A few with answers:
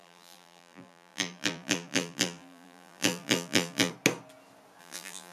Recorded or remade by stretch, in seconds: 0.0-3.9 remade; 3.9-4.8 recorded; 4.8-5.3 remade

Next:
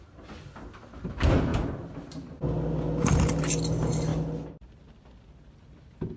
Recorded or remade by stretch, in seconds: 0.0-6.2 recorded

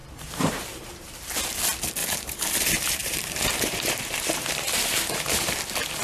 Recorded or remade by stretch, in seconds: 0.0-0.5 remade; 0.5-2.0 recorded; 2.0-5.6 remade; 5.6-6.0 recorded

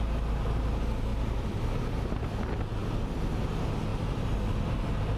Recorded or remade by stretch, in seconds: 0.0-1.1 recorded; 1.1-2.0 remade; 2.0-5.2 recorded